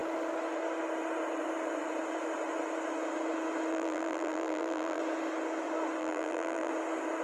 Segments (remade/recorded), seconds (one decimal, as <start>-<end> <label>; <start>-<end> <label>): 0.0-3.7 recorded; 3.7-5.0 remade; 5.0-6.0 recorded; 6.0-6.7 remade; 6.7-7.2 recorded